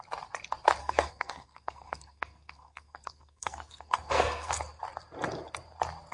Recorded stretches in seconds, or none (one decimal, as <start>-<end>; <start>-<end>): 0.0-0.8; 4.5-6.1